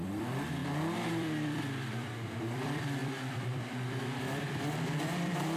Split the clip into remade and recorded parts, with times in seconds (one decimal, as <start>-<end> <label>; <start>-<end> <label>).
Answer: 0.0-0.6 remade; 0.6-1.1 recorded; 1.1-5.6 remade